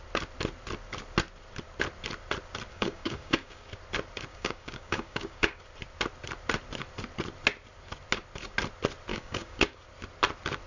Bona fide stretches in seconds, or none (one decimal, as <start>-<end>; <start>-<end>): 0.0-2.7; 3.7-4.3; 5.6-9.1; 9.8-10.7